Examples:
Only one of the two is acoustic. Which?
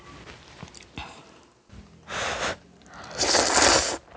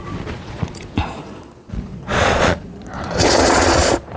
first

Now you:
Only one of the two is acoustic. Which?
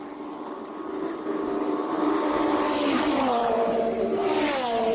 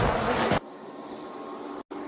second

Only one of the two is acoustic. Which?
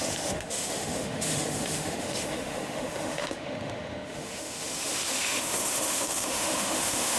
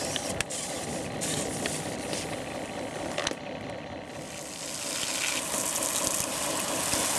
second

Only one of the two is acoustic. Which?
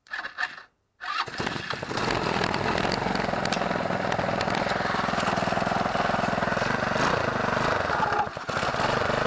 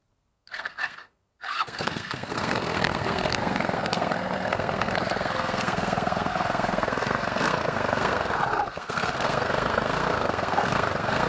first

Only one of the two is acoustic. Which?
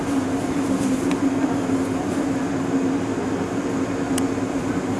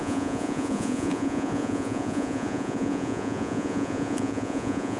first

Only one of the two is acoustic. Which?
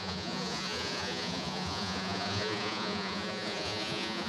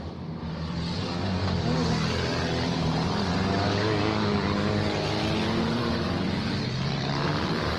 second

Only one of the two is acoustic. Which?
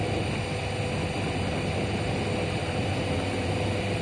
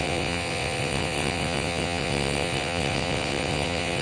first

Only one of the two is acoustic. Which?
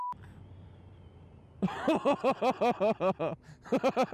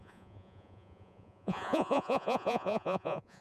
first